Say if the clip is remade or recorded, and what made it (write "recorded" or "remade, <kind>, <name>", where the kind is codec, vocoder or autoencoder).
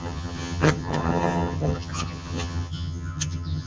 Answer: remade, vocoder, HiFi-GAN